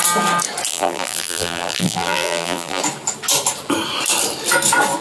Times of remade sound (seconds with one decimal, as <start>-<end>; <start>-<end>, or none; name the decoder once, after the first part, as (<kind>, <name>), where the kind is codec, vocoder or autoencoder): 0.7-2.8 (vocoder, BigVGAN v2)